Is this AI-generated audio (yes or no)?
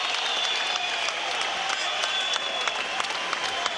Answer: no